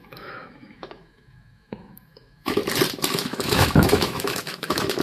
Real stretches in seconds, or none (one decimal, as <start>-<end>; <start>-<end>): 2.6-3.1